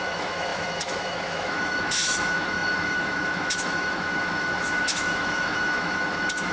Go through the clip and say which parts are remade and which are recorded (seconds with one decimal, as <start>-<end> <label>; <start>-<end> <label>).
0.0-6.5 remade